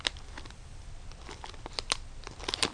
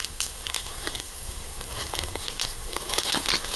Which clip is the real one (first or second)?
first